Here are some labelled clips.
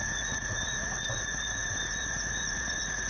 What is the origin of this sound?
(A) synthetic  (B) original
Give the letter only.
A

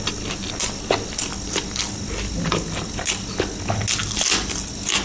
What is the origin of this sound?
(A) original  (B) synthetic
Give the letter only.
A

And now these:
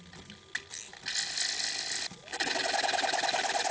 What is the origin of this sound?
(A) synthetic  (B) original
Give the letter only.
B